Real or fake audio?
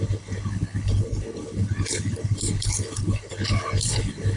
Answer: fake